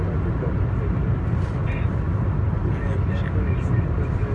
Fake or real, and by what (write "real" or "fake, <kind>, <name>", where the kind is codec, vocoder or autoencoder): real